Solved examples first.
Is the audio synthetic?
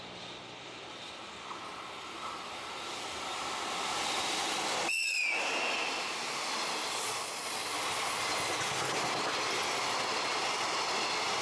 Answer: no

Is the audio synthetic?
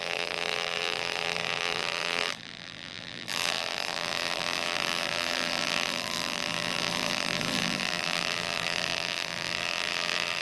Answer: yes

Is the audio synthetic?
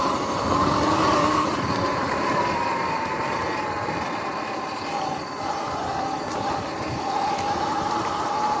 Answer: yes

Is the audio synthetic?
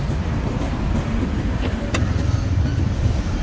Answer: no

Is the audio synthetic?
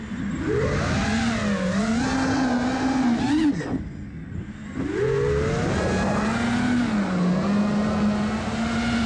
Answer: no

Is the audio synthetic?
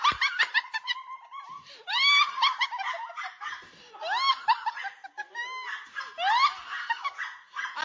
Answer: yes